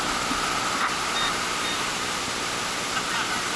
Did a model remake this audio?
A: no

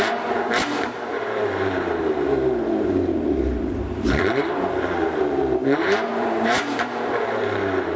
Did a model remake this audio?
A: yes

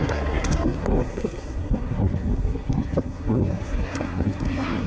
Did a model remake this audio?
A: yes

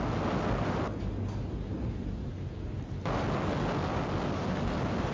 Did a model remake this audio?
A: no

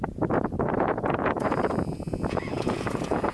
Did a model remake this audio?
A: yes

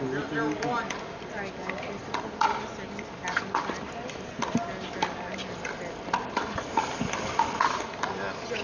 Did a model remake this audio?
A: no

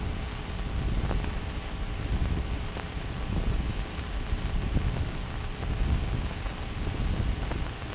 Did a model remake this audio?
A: no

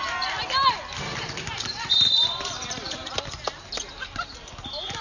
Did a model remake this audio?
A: no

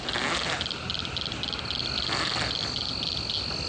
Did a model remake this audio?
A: no